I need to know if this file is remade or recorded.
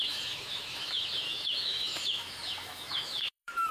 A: remade